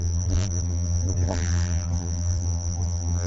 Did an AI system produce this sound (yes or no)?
yes